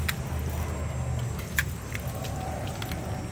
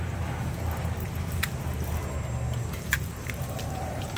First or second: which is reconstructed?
second